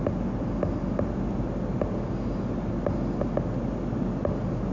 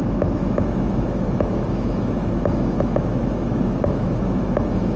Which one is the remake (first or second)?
second